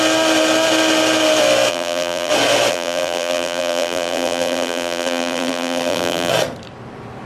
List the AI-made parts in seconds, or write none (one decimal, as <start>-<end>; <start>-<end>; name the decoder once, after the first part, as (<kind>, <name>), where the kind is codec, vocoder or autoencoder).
1.7-2.3 (vocoder, BigVGAN v2); 2.7-6.3